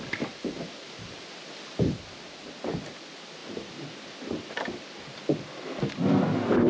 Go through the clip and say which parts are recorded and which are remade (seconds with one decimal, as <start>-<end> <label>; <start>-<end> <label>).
0.0-3.4 recorded; 3.4-4.5 remade; 4.5-6.7 recorded